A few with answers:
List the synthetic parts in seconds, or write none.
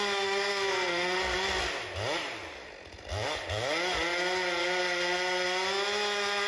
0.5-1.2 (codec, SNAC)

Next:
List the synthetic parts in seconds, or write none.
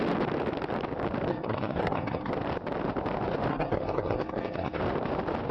1.3-2.3 (codec, SNAC); 3.5-4.8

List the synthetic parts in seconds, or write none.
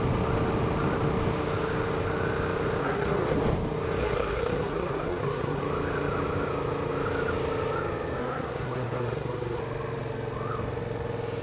2.8-3.4 (codec, SNAC); 4.0-5.6; 8.2-9.6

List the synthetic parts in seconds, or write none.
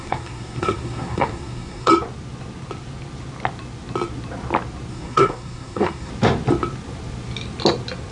0.0-1.9 (codec, SNAC); 4.9-6.1